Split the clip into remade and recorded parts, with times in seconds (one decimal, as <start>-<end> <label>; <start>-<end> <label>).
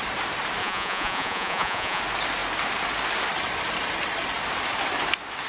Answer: 0.0-0.6 recorded; 0.6-2.0 remade; 2.0-5.5 recorded